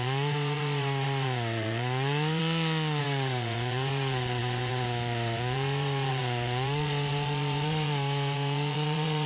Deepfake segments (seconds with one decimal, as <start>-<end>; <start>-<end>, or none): 0.0-2.4; 3.0-9.3